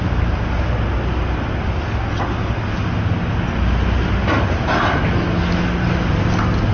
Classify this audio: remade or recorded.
recorded